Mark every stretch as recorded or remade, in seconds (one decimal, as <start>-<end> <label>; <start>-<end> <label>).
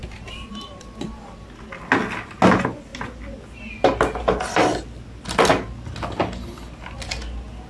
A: 0.0-0.8 remade; 0.8-7.7 recorded